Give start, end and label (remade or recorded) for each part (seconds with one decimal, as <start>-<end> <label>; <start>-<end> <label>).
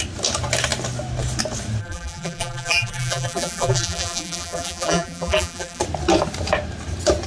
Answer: 0.0-1.8 recorded; 1.8-5.8 remade; 5.8-7.3 recorded